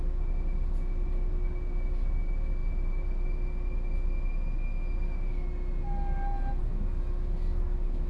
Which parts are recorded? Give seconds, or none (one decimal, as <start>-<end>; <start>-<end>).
0.0-8.1